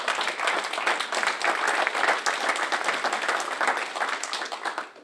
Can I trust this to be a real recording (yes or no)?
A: yes